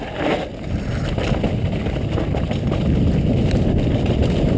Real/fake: real